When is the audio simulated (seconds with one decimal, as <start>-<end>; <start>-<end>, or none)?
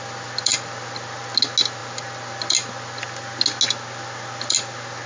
none